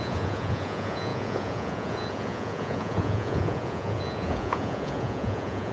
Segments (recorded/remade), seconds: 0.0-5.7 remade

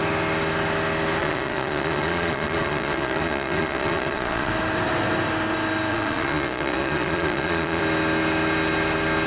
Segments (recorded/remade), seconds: 0.0-1.2 recorded; 1.2-4.5 remade; 4.5-5.9 recorded; 5.9-7.8 remade; 7.8-9.3 recorded

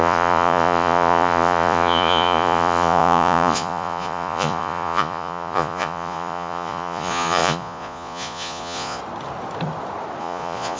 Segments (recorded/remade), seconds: 0.0-9.0 remade; 9.0-10.2 recorded; 10.2-10.8 remade

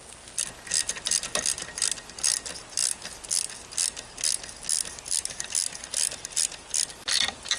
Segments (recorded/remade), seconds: 0.0-7.6 recorded

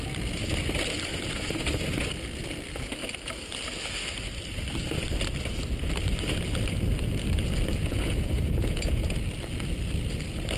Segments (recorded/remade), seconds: 0.0-1.1 recorded; 1.1-2.1 remade; 2.1-7.8 recorded; 7.8-9.1 remade; 9.1-10.6 recorded

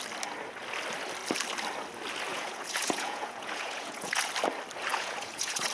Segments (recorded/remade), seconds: 0.0-2.3 recorded; 2.3-4.3 remade; 4.3-4.9 recorded; 4.9-5.7 remade

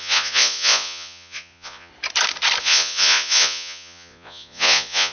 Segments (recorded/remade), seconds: 0.0-1.9 remade; 1.9-2.6 recorded; 2.6-5.1 remade

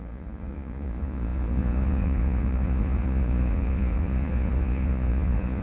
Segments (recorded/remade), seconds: 0.0-5.6 remade